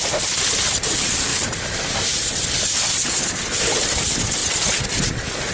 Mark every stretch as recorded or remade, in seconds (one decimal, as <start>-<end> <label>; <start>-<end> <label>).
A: 0.0-5.5 recorded